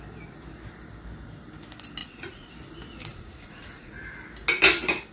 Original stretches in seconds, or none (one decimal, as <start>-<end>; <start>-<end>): 0.0-2.0; 2.5-3.1; 3.9-5.1